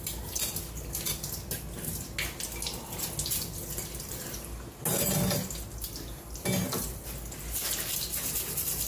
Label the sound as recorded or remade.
recorded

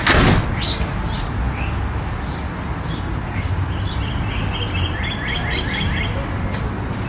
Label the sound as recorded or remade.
recorded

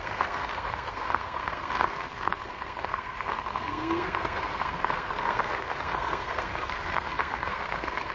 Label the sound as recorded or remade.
remade